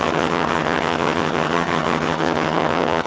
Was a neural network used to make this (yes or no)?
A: yes